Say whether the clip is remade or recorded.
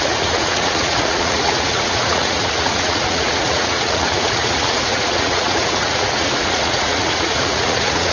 remade